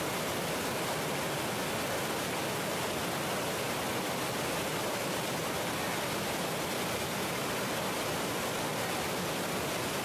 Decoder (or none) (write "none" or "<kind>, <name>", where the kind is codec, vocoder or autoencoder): none